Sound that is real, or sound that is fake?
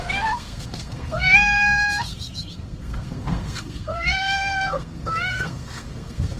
fake